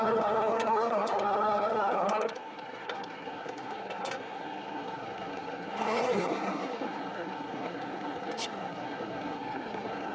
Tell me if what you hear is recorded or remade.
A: remade